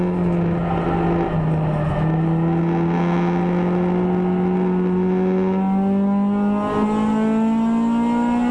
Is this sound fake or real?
real